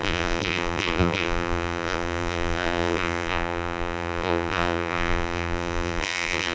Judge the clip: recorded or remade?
remade